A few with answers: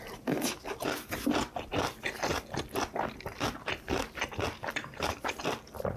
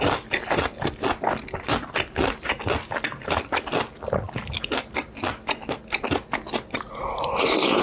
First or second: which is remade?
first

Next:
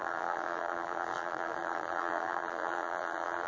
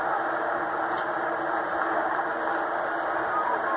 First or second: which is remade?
first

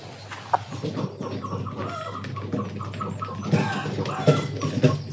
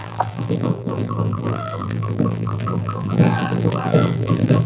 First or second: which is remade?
second